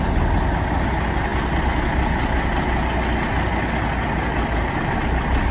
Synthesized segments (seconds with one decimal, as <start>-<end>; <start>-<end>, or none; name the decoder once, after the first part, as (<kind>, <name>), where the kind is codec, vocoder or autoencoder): none